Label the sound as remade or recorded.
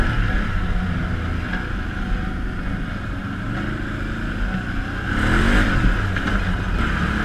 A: recorded